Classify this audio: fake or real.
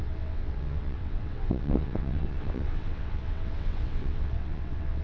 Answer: fake